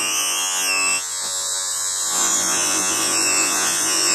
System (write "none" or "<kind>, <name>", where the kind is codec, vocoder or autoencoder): vocoder, Vocos